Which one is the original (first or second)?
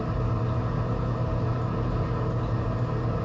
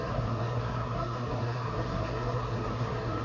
first